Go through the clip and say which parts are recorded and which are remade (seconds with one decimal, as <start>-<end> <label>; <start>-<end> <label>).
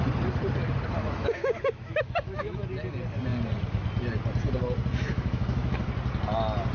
0.0-1.0 recorded; 1.0-2.6 remade; 2.6-5.1 recorded; 5.1-5.8 remade; 5.8-6.7 recorded